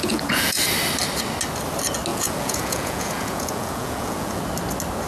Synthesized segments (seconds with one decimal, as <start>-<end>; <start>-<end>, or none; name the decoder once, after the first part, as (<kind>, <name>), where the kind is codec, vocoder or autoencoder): 0.0-0.6 (vocoder, Vocos); 2.1-4.4